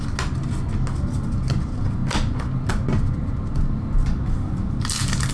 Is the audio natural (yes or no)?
yes